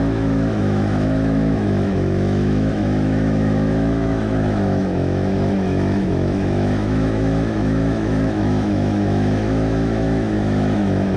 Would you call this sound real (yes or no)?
no